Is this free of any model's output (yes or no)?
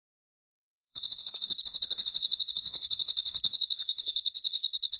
no